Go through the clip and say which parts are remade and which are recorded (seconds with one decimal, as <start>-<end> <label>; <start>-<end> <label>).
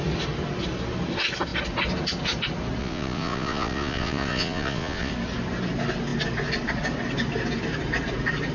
0.0-2.8 recorded; 2.8-5.1 remade; 5.1-8.5 recorded